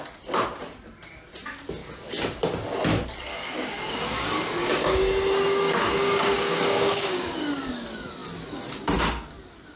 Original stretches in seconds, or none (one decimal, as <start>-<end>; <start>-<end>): 0.0-3.3; 7.7-9.8